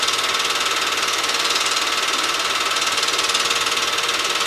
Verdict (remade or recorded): recorded